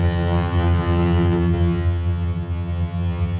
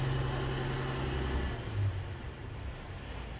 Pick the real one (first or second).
second